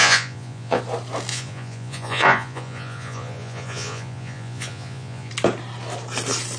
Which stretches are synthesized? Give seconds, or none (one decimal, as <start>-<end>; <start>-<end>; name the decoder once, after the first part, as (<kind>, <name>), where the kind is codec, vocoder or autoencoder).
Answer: 0.0-0.8 (vocoder, Vocos); 1.3-5.3